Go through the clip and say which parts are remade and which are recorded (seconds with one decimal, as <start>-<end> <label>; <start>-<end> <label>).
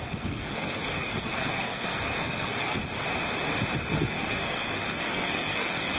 0.0-2.8 remade; 2.8-3.8 recorded; 3.8-6.0 remade